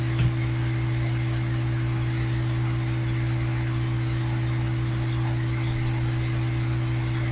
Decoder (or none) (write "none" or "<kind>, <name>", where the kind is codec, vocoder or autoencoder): none